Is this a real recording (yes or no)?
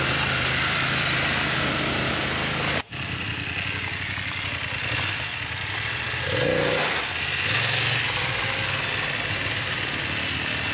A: yes